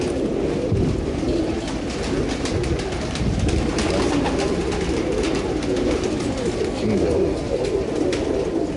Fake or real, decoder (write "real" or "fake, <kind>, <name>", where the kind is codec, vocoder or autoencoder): real